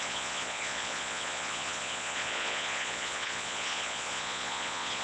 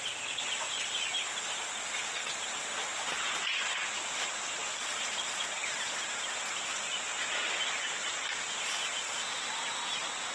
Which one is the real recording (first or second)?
second